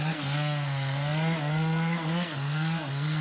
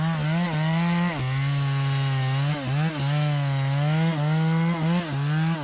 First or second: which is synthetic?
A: first